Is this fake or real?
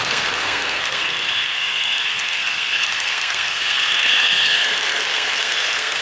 fake